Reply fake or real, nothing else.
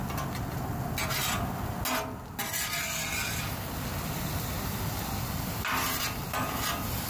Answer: real